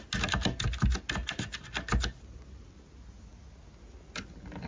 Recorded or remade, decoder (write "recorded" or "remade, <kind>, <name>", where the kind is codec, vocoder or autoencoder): recorded